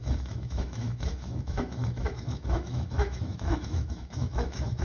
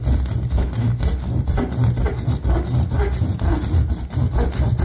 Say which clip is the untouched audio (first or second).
second